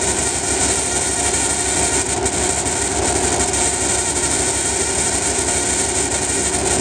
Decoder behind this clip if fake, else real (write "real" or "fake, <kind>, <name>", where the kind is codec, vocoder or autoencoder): real